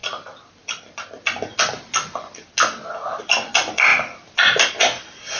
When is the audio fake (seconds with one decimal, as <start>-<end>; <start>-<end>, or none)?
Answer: none